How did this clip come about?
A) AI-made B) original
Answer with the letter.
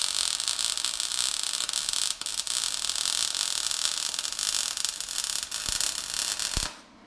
B